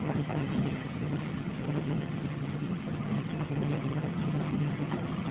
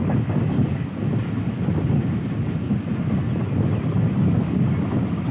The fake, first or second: first